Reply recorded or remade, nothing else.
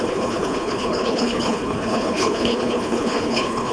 remade